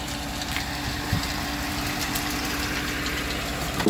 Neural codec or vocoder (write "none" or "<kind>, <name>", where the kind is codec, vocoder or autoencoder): none